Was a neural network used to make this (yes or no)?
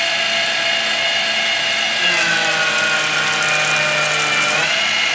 no